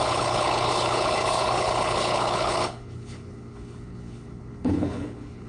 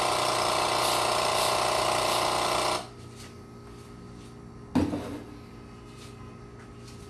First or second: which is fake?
first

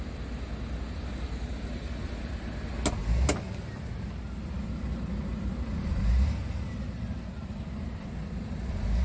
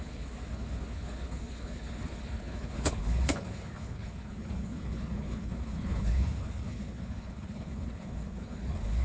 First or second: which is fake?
second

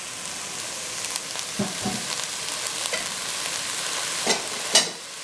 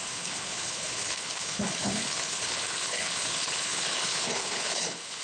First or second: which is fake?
second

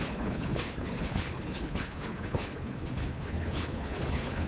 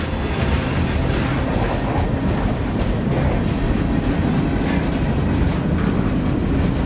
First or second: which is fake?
first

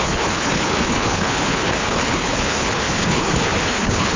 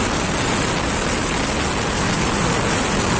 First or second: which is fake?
first